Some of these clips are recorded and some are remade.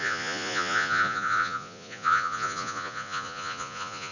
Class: remade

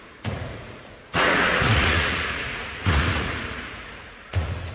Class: remade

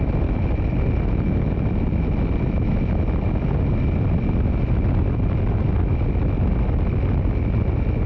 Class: recorded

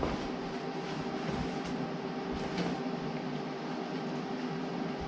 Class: recorded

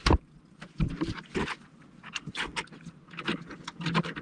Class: recorded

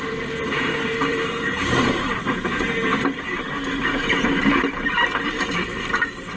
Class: remade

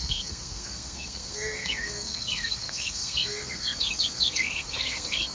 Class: remade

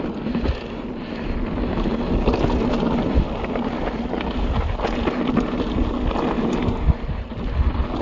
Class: recorded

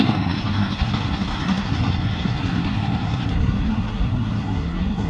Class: remade